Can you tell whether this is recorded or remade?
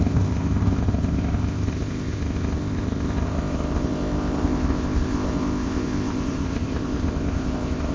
remade